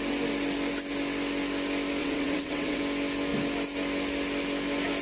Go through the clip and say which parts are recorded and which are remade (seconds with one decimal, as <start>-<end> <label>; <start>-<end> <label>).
0.0-2.0 recorded; 2.0-2.8 remade; 2.8-5.0 recorded